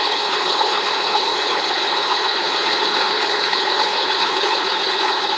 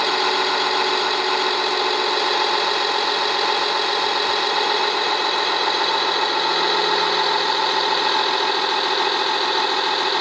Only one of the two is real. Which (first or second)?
second